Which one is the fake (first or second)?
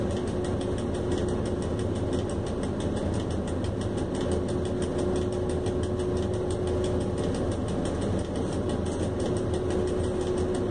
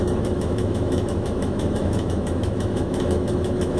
second